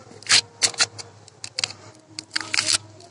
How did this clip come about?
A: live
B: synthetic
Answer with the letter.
A